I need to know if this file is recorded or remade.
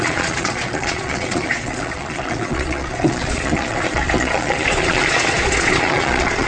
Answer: remade